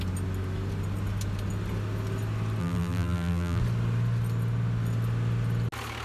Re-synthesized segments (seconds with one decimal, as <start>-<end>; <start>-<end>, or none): 2.6-3.6